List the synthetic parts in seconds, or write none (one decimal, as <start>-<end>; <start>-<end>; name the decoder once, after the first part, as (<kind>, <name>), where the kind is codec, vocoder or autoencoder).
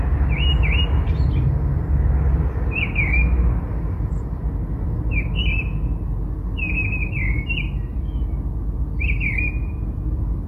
none